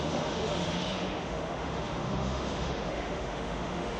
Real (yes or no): no